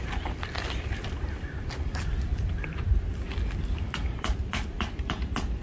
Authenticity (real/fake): real